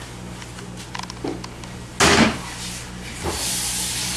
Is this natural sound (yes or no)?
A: yes